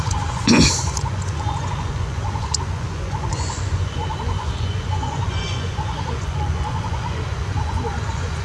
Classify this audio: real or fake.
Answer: fake